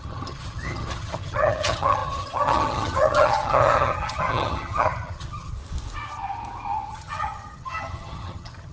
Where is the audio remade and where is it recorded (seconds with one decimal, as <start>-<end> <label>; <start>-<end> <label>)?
0.0-5.5 remade; 5.5-6.9 recorded; 6.9-8.7 remade